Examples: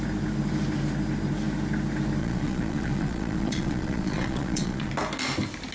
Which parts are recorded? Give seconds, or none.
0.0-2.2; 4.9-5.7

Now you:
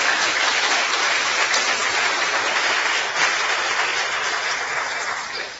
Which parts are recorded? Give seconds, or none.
0.0-5.6

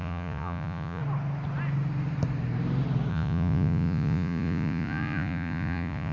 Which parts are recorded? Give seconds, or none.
1.0-3.1